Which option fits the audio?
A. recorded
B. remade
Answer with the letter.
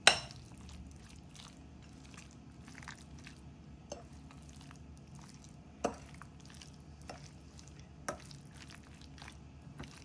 A